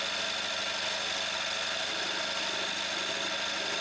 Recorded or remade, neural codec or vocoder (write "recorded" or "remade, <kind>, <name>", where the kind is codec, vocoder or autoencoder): recorded